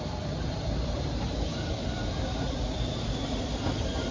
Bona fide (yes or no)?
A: no